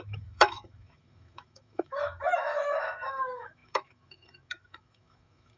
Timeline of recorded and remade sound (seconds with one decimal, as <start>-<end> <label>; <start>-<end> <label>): 0.0-5.6 remade